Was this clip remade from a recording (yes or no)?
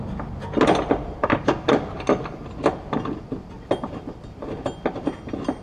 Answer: no